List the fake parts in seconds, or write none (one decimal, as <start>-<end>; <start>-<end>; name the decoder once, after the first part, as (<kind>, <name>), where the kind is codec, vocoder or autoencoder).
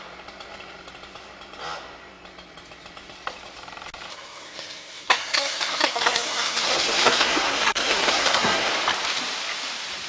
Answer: 4.1-8.7 (codec, SNAC)